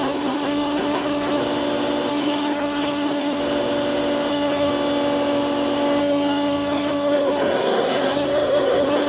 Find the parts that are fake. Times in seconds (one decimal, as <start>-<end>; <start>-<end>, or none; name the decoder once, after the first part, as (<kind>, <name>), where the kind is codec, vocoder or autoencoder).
0.0-1.4 (codec, SNAC); 2.1-3.4; 4.3-4.7; 6.0-9.1